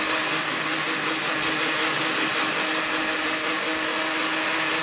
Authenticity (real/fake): real